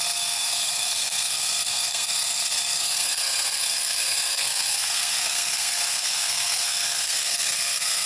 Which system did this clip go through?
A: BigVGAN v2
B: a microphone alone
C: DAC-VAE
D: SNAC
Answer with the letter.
D